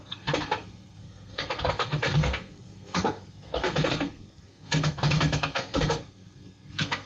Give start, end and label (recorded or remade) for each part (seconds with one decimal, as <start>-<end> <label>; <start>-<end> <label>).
0.0-7.1 remade